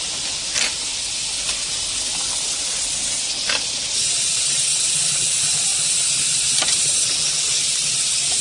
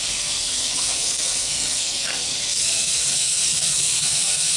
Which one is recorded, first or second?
first